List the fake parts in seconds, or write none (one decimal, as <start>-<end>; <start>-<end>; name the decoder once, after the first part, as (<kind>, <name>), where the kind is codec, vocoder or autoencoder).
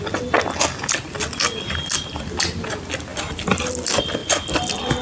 none